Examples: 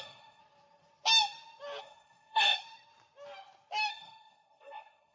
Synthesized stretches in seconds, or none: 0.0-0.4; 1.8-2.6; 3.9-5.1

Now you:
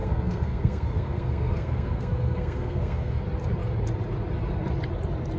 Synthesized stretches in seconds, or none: 0.0-3.2

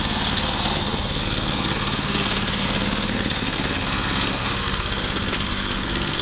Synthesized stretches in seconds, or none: 0.0-6.2

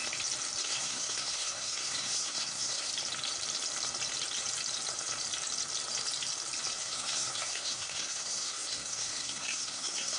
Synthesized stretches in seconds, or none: 0.6-2.9; 6.8-10.2

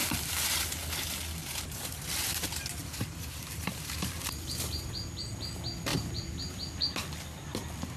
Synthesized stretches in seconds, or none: 0.0-0.5; 1.4-2.0; 2.8-4.9; 5.9-6.5